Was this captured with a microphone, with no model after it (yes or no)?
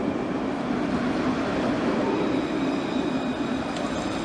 no